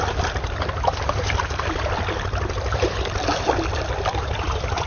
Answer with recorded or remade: recorded